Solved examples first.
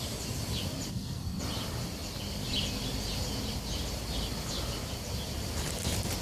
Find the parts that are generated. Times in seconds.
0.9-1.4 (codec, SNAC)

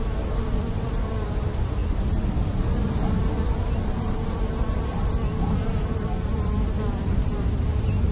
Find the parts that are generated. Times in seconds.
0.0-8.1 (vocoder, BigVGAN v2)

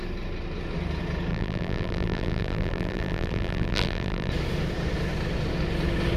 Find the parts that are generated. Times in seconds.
1.3-4.3 (vocoder, BigVGAN v2)

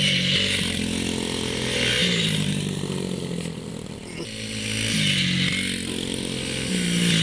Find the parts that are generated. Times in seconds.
none

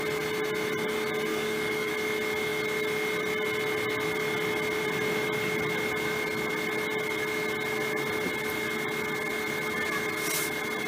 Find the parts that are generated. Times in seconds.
1.3-1.9 (codec, DAC)